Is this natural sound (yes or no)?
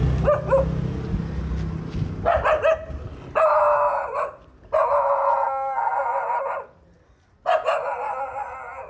yes